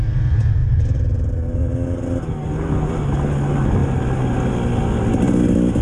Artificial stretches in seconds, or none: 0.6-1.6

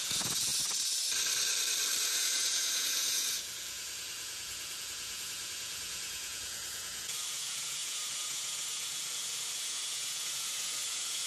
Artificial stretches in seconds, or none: 0.0-0.5; 2.0-11.3

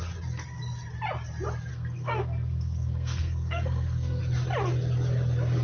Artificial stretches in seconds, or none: 1.7-4.2